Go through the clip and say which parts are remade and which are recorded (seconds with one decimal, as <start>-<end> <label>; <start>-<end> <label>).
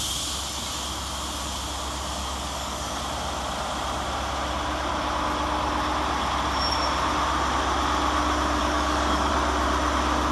0.0-2.2 recorded; 2.2-3.0 remade; 3.0-8.6 recorded; 8.6-9.3 remade; 9.3-10.3 recorded